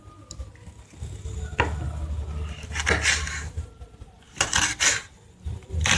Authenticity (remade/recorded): recorded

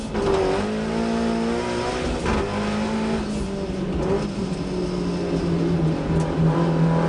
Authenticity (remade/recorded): recorded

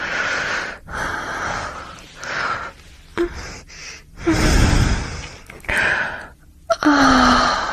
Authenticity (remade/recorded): recorded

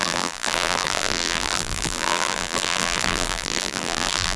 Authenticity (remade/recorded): remade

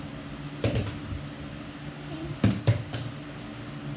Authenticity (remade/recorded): recorded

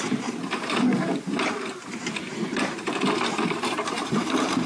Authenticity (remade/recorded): remade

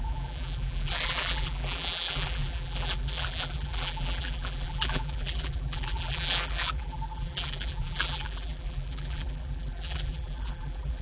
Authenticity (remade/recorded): remade